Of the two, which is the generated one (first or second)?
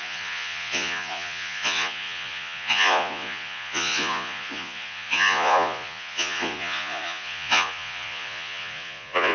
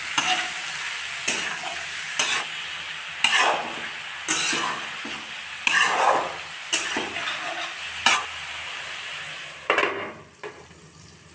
first